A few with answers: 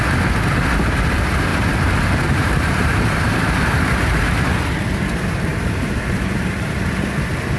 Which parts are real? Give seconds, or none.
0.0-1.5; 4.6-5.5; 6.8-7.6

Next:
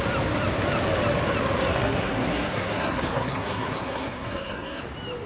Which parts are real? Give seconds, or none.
0.0-1.7; 4.8-5.3

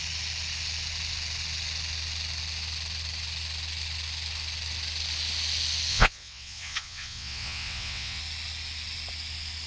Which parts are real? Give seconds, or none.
0.0-5.9; 8.2-9.7

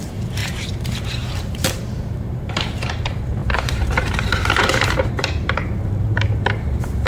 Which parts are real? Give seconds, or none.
none

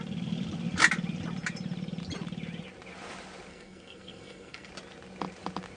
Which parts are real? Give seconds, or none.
0.0-3.5; 4.7-5.8

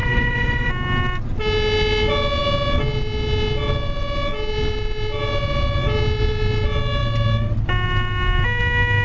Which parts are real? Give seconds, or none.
0.7-9.0

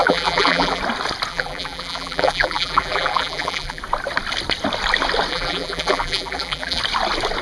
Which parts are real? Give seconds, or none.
0.8-1.3; 3.8-5.3; 6.8-7.4

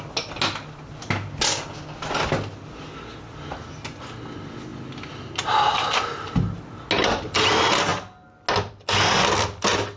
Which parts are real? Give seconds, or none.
0.0-10.0